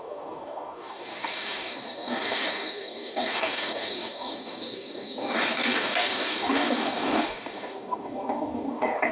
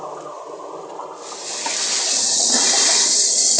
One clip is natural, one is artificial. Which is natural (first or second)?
second